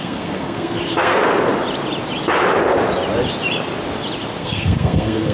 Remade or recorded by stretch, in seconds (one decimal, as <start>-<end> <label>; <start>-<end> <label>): 0.0-1.2 remade; 1.2-4.4 recorded; 4.4-5.3 remade